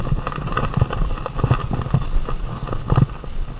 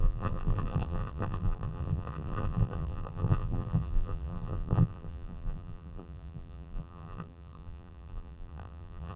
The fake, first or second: second